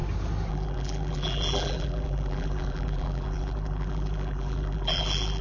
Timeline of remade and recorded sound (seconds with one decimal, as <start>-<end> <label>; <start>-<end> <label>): 0.0-0.5 recorded; 0.5-5.4 remade

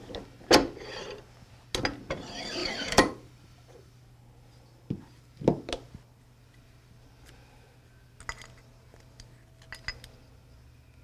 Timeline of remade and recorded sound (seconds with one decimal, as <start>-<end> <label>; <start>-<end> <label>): 0.0-2.6 recorded; 2.6-4.0 remade; 4.0-11.0 recorded

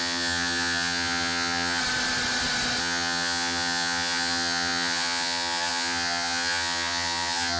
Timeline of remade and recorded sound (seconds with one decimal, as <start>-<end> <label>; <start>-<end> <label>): 0.0-1.8 remade; 1.8-2.8 recorded; 2.8-7.6 remade

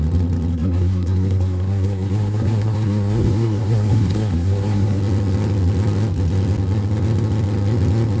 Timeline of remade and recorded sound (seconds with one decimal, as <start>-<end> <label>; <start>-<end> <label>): 0.0-0.5 recorded; 0.5-5.0 remade; 5.0-8.2 recorded